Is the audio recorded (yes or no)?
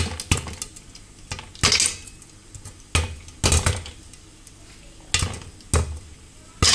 yes